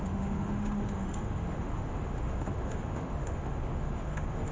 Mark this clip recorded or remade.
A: remade